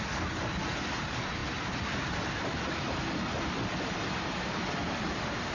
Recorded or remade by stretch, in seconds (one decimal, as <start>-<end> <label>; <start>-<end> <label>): 0.0-5.5 recorded